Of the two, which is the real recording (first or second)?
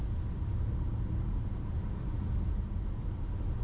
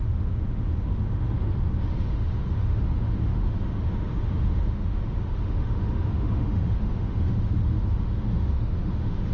first